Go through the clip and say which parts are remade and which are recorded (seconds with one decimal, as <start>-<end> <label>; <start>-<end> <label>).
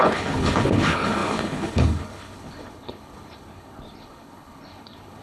0.0-5.2 remade